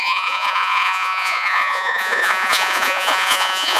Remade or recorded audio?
remade